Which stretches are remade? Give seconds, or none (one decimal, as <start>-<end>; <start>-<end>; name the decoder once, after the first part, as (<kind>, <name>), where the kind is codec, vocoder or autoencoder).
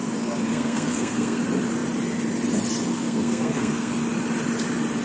0.0-1.4 (codec, SNAC); 2.9-3.9